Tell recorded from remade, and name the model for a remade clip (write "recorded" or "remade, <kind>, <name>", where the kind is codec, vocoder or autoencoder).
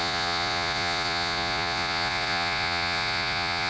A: remade, vocoder, Vocos